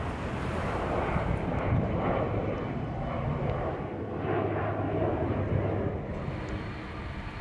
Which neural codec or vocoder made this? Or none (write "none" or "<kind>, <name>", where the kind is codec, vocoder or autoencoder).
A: none